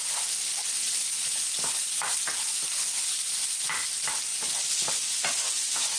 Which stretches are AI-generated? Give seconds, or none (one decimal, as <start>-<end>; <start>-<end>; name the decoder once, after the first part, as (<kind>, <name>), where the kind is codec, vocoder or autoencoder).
none